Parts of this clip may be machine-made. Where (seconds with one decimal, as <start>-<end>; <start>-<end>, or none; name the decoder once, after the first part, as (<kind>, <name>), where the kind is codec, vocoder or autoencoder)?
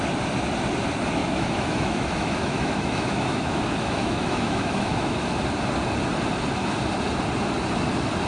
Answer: 1.2-5.4 (autoencoder, DAC-VAE)